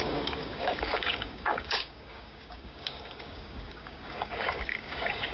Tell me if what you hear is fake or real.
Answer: fake